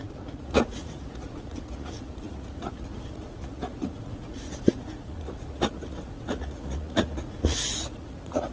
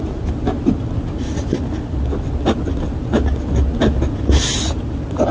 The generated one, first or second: first